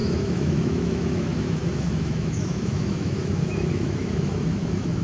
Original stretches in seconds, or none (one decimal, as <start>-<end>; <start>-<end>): none